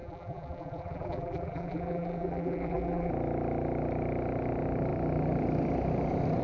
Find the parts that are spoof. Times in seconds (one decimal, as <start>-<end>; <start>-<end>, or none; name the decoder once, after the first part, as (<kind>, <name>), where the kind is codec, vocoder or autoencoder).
0.0-3.1 (vocoder, BigVGAN v2)